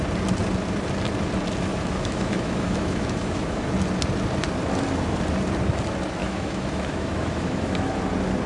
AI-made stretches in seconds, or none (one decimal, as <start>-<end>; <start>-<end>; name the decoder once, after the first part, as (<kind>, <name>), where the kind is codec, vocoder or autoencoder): 1.7-3.7 (autoencoder, DAC-VAE); 6.2-8.0